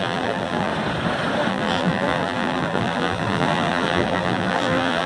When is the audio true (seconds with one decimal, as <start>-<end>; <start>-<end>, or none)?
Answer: 0.7-1.5